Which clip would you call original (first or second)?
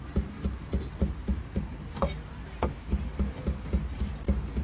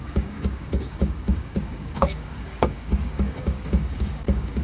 first